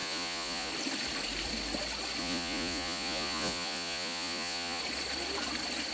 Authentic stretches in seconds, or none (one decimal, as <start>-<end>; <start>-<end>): 0.7-2.2; 4.8-5.9